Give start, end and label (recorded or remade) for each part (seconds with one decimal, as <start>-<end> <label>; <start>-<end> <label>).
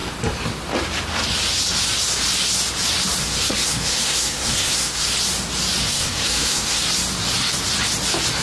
0.0-3.2 recorded; 3.2-5.1 remade; 5.1-5.8 recorded; 5.8-6.8 remade; 6.8-8.4 recorded